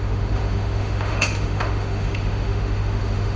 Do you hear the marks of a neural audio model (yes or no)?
yes